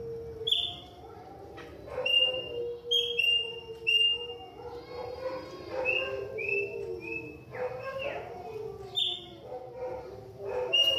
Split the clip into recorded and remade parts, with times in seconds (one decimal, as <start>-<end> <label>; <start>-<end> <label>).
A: 0.0-11.0 recorded